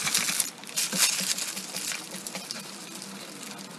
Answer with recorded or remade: recorded